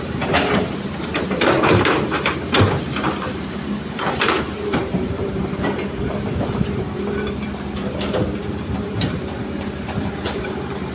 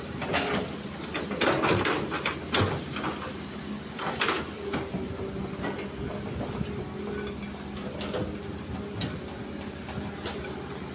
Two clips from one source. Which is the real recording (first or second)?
second